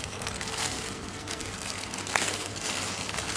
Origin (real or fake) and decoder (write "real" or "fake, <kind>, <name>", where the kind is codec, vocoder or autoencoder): fake, codec, SNAC